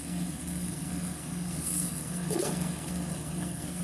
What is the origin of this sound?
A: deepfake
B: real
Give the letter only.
A